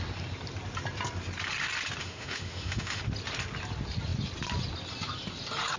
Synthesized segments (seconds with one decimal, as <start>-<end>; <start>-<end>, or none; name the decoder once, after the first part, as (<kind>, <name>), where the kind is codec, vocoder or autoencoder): 2.0-3.0 (autoencoder, DAC-VAE)